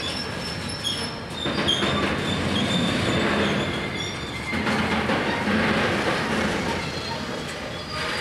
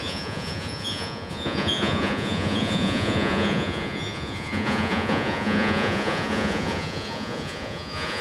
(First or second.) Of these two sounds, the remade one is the second